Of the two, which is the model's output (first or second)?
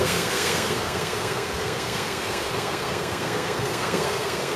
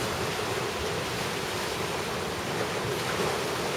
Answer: first